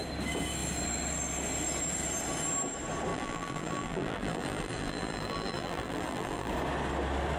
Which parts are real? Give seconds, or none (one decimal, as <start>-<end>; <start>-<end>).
0.0-3.1; 6.5-7.4